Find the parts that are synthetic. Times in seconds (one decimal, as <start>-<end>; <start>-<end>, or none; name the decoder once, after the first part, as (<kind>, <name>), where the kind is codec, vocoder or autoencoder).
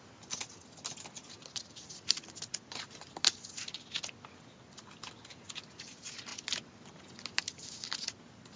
none